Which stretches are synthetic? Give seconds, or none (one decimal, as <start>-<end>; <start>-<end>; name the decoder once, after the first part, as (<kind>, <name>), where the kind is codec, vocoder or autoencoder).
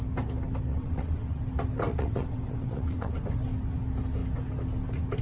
0.7-1.4 (vocoder, WaveNeXt); 1.9-3.2